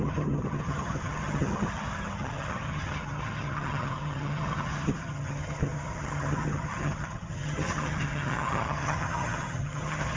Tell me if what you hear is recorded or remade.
remade